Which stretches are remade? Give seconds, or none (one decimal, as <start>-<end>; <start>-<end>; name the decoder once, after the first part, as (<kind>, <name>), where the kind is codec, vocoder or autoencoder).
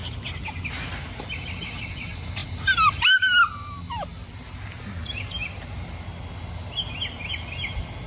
none